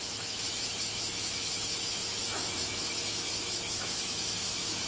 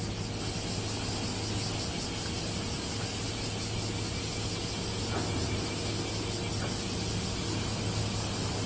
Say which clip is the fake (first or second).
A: first